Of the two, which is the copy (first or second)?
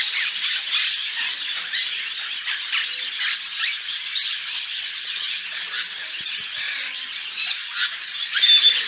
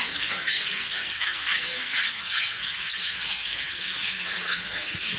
second